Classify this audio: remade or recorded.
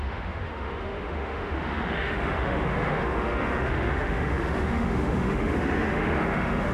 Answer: remade